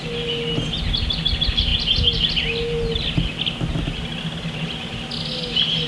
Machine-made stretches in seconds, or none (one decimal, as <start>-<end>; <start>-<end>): none